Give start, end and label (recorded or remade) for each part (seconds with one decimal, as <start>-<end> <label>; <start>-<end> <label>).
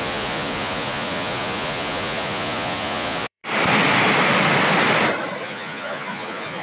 0.0-3.4 remade; 3.4-5.4 recorded; 5.4-6.6 remade